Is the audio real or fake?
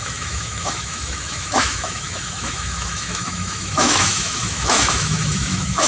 fake